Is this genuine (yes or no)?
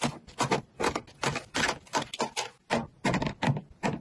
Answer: yes